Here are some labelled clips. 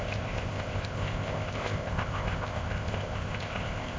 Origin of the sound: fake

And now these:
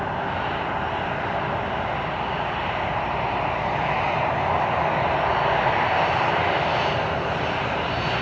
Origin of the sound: real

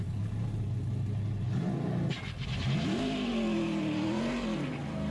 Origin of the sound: real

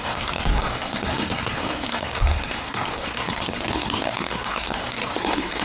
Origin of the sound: fake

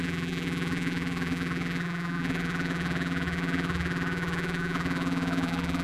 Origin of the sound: fake